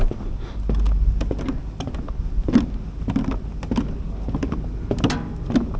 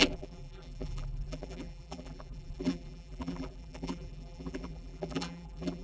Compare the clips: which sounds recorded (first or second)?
first